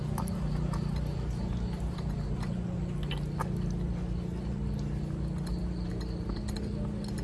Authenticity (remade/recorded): recorded